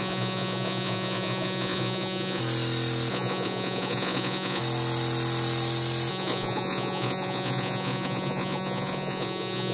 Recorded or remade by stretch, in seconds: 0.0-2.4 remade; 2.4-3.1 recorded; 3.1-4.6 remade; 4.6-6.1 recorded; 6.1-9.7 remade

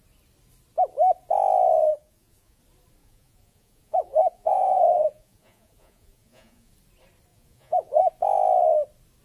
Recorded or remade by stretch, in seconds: 0.0-1.9 recorded; 1.9-2.6 remade; 2.6-3.0 recorded; 3.0-6.7 remade; 6.7-7.3 recorded; 7.3-8.1 remade; 8.1-9.2 recorded

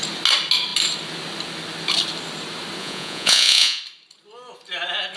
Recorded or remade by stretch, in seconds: 0.0-2.8 recorded; 2.8-3.8 remade; 3.8-5.2 recorded